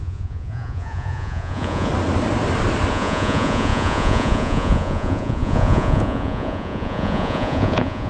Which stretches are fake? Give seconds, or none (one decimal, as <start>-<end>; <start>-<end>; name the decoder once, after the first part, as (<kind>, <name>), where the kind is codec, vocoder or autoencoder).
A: 0.0-1.9 (vocoder, Vocos); 2.9-8.1